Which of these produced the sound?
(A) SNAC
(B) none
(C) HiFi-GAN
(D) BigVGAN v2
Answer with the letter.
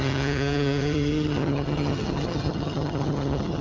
C